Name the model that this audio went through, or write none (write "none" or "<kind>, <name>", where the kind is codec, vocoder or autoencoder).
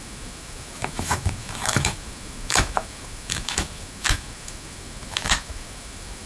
autoencoder, DAC-VAE